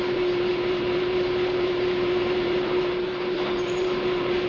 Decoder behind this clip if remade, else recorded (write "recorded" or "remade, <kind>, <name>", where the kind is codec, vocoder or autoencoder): remade, vocoder, BigVGAN v2